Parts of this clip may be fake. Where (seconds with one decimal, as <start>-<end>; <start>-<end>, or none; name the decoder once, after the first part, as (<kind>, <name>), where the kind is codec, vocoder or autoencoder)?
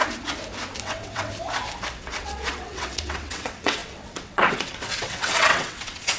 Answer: 0.8-1.3 (vocoder, WaveNeXt); 2.0-6.2